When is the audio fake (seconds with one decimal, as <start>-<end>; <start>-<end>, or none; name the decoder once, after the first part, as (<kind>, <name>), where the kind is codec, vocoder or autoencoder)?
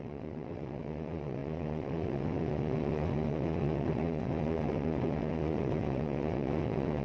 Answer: 0.0-7.0 (vocoder, WaveNeXt)